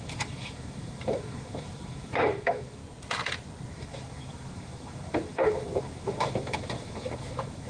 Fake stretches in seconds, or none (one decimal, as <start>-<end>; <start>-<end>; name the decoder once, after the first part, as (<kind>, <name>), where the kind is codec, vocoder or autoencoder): 0.0-2.8 (autoencoder, DAC-VAE); 3.7-7.7